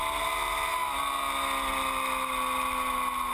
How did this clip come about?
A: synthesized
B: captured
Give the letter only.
B